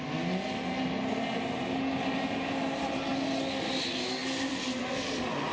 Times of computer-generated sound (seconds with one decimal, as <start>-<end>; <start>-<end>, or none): none